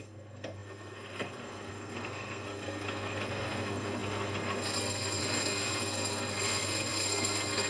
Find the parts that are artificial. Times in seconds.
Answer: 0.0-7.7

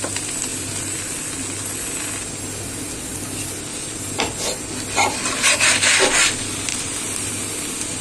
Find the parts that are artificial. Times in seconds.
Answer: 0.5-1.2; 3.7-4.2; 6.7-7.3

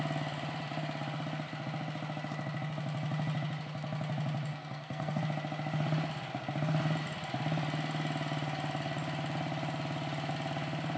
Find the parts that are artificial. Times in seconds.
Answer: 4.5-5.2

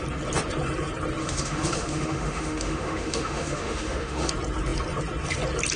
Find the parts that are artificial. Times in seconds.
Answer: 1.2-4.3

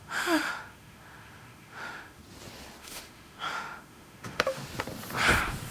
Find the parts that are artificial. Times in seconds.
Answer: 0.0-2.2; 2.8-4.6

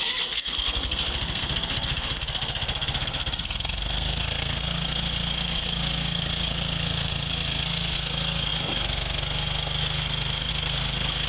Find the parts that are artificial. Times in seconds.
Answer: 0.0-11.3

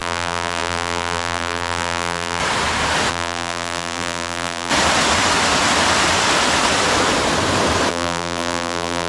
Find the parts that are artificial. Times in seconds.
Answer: 0.0-2.4; 3.1-4.7; 7.9-9.1

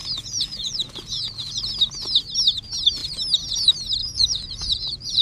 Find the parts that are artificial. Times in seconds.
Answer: 0.0-1.6; 4.0-5.2